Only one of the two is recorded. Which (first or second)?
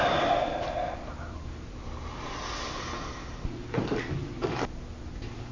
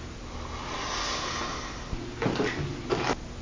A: second